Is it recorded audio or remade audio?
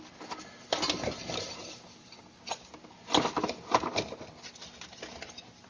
recorded